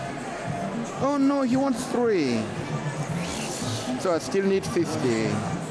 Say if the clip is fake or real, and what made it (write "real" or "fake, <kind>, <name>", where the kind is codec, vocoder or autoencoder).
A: real